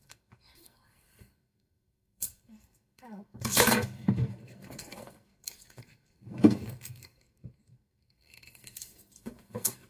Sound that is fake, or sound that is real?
fake